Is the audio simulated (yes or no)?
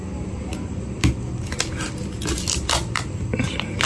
no